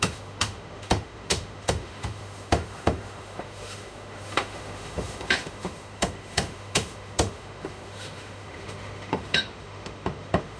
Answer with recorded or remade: remade